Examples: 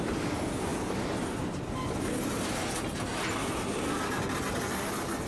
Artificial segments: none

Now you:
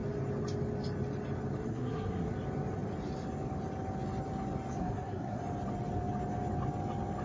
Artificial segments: 1.7-2.3 (codec, SNAC); 4.8-5.4